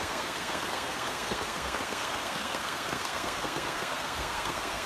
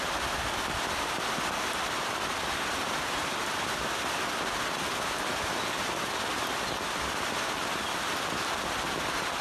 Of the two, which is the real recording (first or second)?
second